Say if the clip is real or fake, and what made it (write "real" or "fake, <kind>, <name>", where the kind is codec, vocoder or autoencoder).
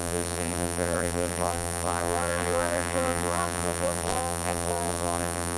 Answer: fake, vocoder, BigVGAN v2